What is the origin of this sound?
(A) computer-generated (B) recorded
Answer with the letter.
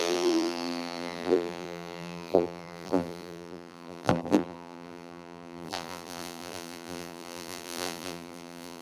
A